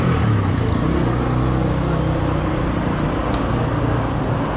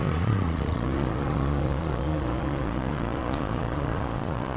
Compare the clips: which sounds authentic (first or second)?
first